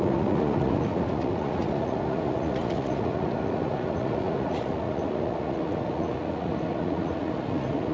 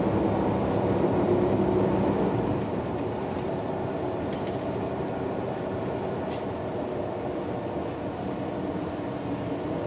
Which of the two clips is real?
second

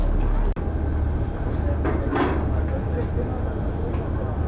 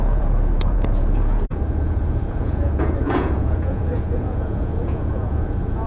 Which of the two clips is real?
first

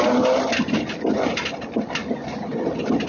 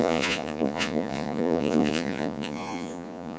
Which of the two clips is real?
first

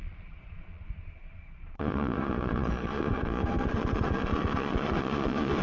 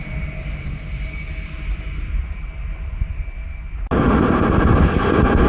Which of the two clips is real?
second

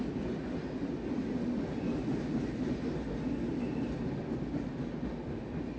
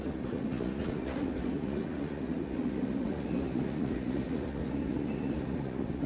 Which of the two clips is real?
first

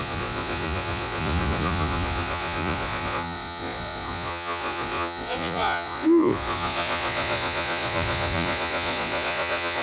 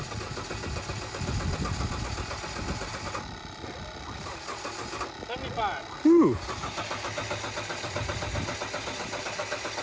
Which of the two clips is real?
second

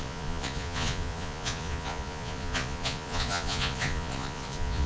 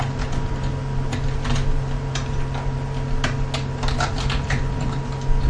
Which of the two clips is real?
second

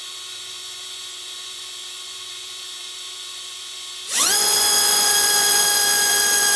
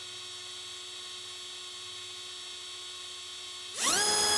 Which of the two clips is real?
second